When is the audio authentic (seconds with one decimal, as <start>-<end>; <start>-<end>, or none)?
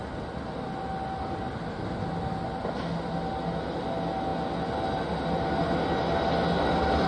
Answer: 0.0-7.1